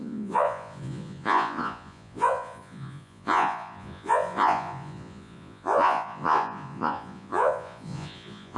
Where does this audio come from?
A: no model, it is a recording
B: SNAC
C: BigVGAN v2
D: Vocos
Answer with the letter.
D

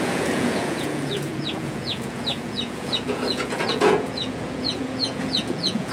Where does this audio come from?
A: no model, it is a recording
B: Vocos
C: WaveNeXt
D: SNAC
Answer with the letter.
B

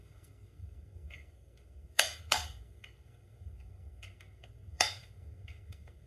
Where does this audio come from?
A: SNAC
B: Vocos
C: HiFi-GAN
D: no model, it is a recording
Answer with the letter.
A